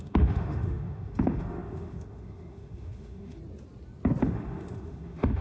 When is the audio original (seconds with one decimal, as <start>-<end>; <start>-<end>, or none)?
3.4-4.2